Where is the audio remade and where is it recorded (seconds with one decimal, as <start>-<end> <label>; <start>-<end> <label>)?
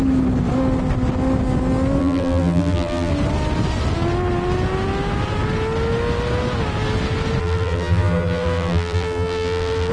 0.0-2.0 recorded; 2.0-3.1 remade; 3.1-7.4 recorded; 7.4-9.9 remade